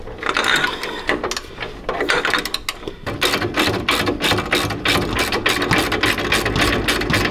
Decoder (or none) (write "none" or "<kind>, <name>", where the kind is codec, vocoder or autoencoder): none